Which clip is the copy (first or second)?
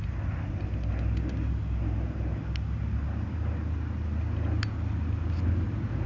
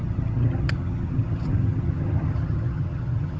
second